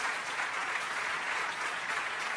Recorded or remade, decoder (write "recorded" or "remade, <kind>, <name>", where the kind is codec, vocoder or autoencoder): remade, vocoder, Vocos